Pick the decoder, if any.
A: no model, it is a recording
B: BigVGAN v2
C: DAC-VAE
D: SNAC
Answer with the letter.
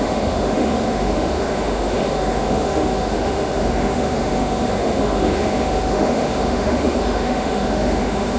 C